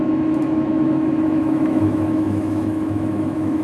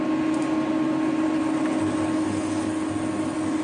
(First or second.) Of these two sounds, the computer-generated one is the first